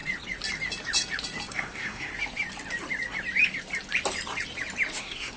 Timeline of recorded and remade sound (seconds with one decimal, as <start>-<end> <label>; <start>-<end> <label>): 0.0-1.5 recorded; 1.5-2.1 remade; 2.1-5.0 recorded; 5.0-5.4 remade